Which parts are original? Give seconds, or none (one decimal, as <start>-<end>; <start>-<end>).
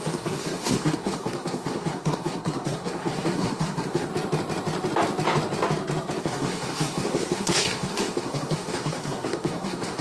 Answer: 4.1-6.2